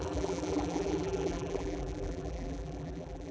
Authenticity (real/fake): fake